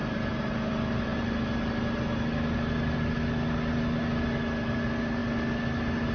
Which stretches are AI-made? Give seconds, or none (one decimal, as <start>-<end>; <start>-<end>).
none

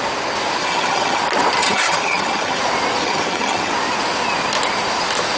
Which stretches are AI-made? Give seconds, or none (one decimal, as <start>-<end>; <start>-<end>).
0.6-1.2; 1.6-2.6; 3.0-3.7

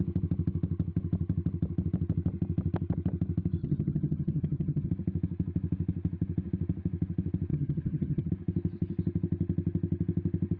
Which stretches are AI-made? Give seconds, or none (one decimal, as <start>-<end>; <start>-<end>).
3.6-4.9; 7.5-8.3

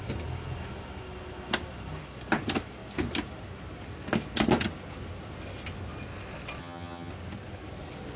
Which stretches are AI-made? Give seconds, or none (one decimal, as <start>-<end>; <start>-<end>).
6.6-7.1

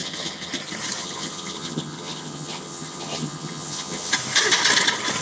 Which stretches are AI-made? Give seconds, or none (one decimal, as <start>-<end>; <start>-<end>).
0.0-0.5; 1.0-4.1

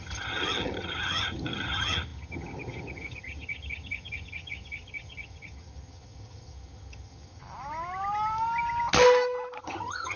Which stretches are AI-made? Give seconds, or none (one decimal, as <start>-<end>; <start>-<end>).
0.0-7.4; 9.6-10.2

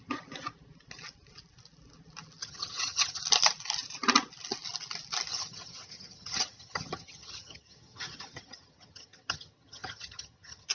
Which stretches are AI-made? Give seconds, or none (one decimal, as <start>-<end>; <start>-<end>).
2.4-3.2; 5.3-10.7

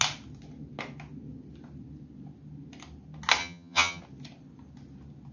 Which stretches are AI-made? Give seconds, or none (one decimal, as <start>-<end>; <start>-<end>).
3.4-4.0